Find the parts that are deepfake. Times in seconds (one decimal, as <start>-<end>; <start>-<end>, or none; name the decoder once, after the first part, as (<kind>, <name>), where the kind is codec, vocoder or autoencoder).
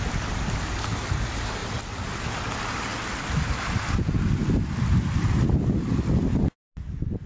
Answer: none